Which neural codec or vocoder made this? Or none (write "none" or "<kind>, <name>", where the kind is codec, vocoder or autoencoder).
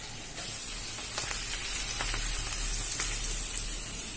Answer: none